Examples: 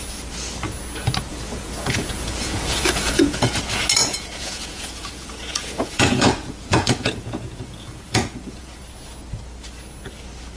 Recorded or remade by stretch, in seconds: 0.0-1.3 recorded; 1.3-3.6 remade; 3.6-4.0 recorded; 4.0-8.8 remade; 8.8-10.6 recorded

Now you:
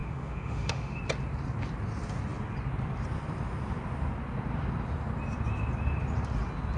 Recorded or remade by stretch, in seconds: 0.0-1.0 remade; 1.0-6.8 recorded

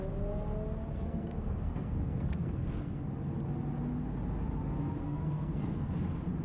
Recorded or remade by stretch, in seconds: 0.0-0.9 recorded; 0.9-3.1 remade; 3.1-5.0 recorded; 5.0-5.9 remade; 5.9-6.4 recorded

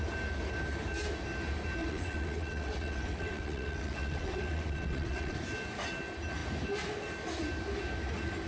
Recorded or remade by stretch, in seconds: 0.0-1.8 recorded; 1.8-5.4 remade; 5.4-8.5 recorded

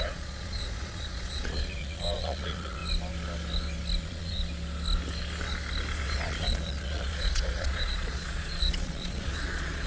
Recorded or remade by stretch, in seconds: 0.0-2.8 remade; 2.8-4.0 recorded; 4.0-4.4 remade; 4.4-6.0 recorded; 6.0-9.9 remade

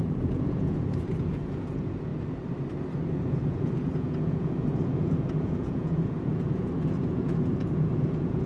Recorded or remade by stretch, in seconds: 0.0-2.1 remade; 2.1-3.1 recorded; 3.1-8.5 remade